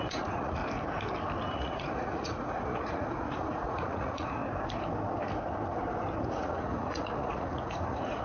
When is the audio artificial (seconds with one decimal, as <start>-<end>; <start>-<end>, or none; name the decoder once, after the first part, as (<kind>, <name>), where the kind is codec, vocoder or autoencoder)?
0.0-0.6 (vocoder, Vocos); 1.5-4.4; 6.2-8.2